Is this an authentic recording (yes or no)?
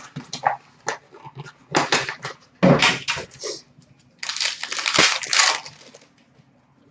yes